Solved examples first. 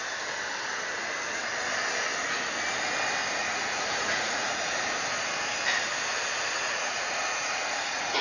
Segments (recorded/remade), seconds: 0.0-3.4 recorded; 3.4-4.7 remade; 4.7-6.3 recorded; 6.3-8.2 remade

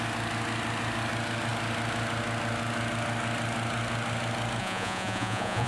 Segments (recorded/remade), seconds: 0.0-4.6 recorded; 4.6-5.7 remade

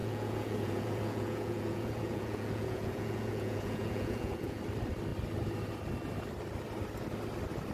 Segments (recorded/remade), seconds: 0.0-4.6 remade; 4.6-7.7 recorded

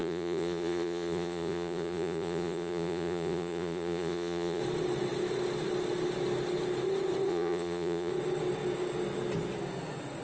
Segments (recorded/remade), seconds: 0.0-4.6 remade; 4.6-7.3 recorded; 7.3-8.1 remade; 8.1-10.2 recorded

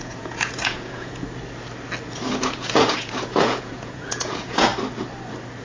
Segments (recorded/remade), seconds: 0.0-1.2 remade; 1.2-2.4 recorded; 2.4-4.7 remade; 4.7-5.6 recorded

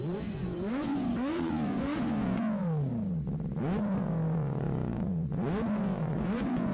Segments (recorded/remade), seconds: 0.0-2.9 remade; 2.9-3.6 recorded; 3.6-6.7 remade